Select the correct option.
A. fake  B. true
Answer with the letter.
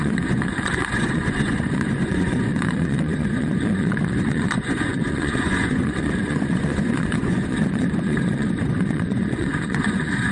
A